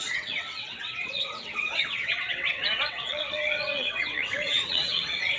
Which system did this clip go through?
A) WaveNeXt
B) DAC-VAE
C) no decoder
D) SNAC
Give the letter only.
A